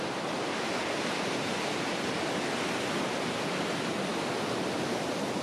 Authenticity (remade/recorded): recorded